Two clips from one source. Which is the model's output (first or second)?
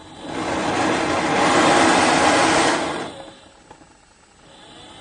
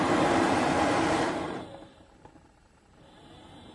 second